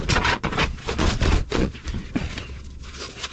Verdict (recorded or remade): remade